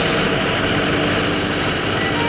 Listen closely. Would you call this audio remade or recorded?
recorded